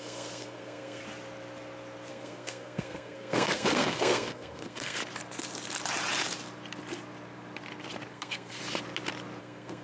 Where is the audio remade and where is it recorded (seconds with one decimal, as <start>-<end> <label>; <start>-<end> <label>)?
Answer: 0.0-1.0 remade; 1.0-2.1 recorded; 2.1-5.0 remade; 5.0-8.1 recorded; 8.1-8.6 remade; 8.6-9.4 recorded; 9.4-9.8 remade